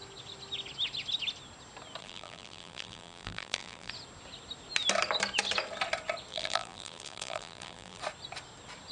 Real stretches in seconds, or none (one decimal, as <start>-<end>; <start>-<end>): 0.0-2.0; 3.9-6.3; 8.0-8.9